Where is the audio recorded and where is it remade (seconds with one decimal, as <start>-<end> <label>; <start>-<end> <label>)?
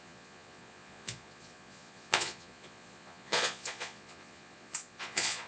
0.0-5.5 remade